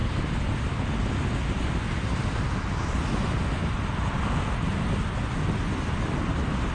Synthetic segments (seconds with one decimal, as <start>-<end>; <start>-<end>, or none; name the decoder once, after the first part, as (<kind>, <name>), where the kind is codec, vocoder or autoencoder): none